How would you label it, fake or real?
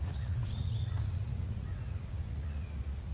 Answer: fake